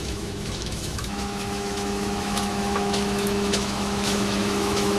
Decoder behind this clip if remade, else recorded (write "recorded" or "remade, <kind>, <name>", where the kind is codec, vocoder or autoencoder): remade, autoencoder, DAC-VAE